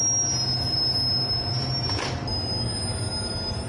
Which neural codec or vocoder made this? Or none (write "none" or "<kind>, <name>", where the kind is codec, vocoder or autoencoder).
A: none